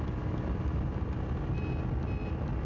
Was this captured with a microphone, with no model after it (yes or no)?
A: yes